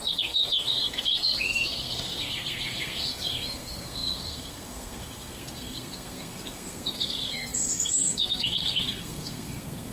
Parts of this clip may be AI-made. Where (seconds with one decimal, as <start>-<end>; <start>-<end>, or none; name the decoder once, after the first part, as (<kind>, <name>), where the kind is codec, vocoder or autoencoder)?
0.0-9.9 (codec, SNAC)